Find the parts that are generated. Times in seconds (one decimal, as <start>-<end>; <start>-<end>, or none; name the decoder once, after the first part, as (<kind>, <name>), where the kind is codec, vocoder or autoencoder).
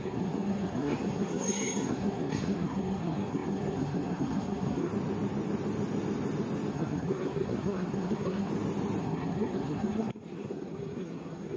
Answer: 0.0-4.9 (codec, SNAC); 6.7-8.5; 9.0-11.6